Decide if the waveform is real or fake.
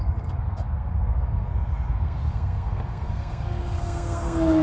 fake